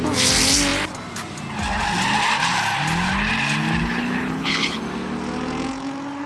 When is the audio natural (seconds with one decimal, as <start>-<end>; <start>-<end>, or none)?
0.0-3.8; 4.8-6.3

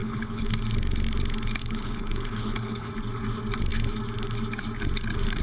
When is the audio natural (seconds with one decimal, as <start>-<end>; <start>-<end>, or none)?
0.6-1.6; 2.9-5.4

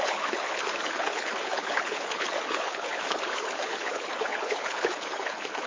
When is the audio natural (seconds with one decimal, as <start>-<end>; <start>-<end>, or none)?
none

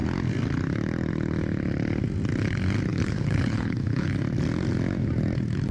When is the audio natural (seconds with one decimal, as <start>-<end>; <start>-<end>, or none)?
0.0-2.9; 4.1-5.7